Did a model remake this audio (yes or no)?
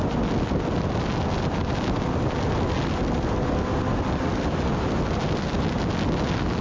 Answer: no